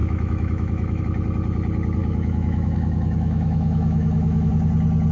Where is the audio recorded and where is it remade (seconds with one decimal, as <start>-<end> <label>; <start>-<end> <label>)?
0.0-1.0 remade; 1.0-2.0 recorded; 2.0-4.5 remade; 4.5-5.1 recorded

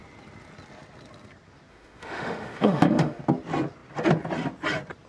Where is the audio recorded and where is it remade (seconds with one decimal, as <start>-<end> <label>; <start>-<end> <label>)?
0.0-1.7 recorded; 1.7-3.2 remade; 3.2-5.1 recorded

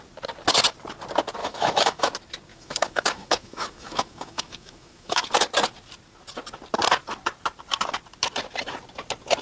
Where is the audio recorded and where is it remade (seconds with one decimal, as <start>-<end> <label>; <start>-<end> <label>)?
0.0-1.4 recorded; 1.4-2.1 remade; 2.1-2.5 recorded; 2.5-5.2 remade; 5.2-9.4 recorded